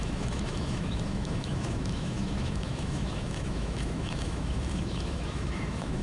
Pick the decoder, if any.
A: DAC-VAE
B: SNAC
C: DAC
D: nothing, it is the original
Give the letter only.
A